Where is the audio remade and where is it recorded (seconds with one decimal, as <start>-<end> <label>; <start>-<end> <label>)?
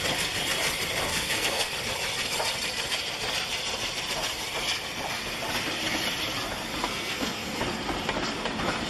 0.0-1.1 recorded; 1.1-1.7 remade; 1.7-6.8 recorded; 6.8-7.6 remade; 7.6-8.9 recorded